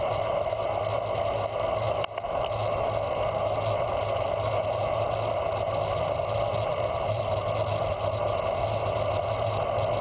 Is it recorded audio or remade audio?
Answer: recorded